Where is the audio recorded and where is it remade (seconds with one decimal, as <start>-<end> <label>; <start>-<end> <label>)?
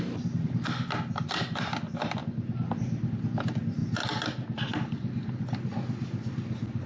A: 0.0-6.9 recorded